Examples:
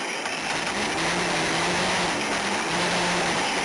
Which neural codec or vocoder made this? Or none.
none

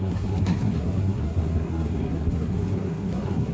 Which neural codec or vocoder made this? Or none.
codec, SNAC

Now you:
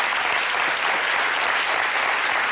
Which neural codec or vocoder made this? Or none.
none